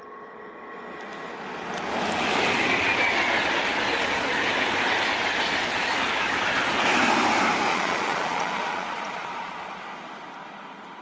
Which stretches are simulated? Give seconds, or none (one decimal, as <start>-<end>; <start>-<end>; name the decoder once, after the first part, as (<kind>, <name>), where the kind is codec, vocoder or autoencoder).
7.7-9.8 (vocoder, Vocos)